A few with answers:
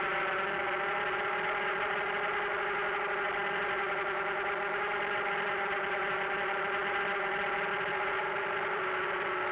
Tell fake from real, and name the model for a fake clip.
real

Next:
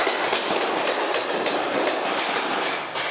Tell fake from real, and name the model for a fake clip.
real